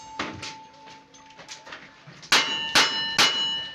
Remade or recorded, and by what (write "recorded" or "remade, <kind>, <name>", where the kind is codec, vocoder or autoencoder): recorded